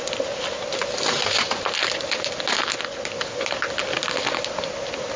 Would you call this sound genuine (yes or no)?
yes